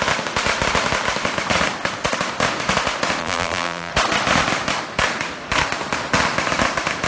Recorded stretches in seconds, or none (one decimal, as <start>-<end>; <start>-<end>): 0.0-3.2; 3.9-7.1